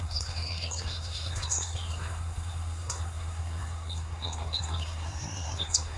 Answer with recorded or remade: remade